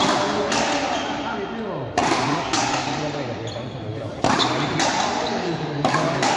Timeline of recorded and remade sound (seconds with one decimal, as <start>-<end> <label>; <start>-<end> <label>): 0.0-2.0 recorded; 2.0-2.9 remade; 2.9-3.9 recorded; 3.9-4.5 remade; 4.5-5.3 recorded; 5.3-6.4 remade